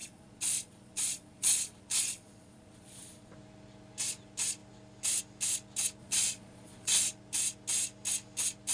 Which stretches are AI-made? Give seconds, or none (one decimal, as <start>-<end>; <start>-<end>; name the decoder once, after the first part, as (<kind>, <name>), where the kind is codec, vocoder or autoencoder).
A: 0.0-3.3 (vocoder, Vocos); 6.0-7.1